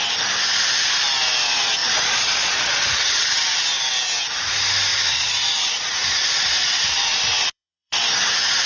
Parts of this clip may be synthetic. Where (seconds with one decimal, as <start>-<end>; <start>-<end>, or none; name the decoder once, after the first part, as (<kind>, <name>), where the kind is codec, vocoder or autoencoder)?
1.8-3.3 (vocoder, Vocos); 4.9-8.1